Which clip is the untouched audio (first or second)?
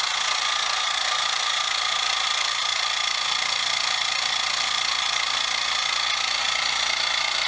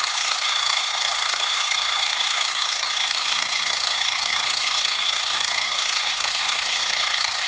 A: first